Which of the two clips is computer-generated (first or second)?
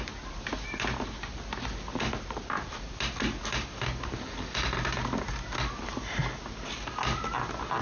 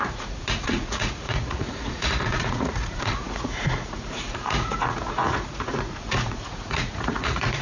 second